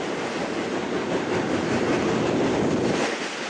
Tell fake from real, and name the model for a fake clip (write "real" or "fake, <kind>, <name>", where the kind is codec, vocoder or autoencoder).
fake, vocoder, BigVGAN v2